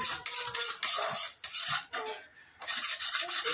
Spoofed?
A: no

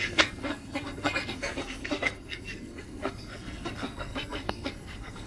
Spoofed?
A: yes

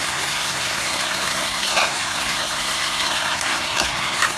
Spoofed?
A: yes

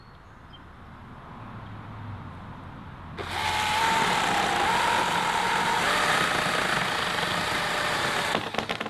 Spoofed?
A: no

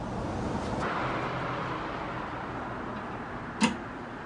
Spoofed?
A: no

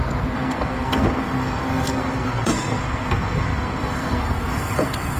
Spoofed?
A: yes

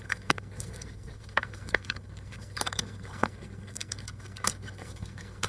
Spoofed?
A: yes